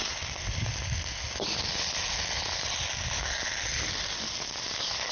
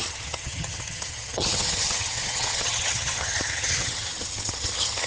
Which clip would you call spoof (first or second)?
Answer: second